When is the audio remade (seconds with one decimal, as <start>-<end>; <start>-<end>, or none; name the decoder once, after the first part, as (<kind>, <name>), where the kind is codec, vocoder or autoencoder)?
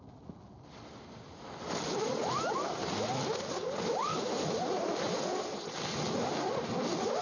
none